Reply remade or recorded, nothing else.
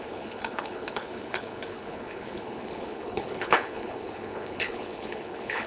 remade